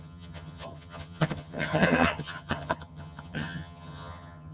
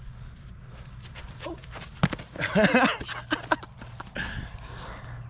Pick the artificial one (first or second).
first